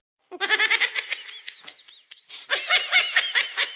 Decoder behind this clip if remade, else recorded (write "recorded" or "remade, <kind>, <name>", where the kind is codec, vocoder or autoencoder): recorded